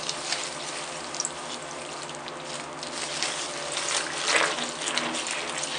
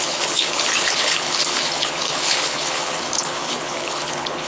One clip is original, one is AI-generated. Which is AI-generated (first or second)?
second